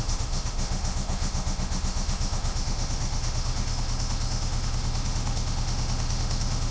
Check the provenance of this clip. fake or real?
fake